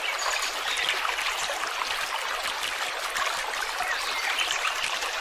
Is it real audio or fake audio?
real